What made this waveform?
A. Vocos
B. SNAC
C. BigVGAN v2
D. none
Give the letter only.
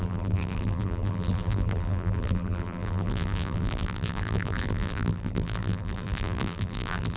C